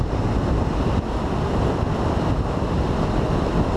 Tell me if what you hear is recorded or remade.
recorded